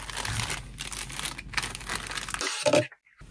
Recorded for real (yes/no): yes